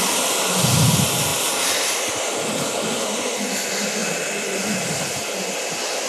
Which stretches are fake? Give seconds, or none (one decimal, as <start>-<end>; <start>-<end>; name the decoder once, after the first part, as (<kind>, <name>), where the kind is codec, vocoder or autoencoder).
none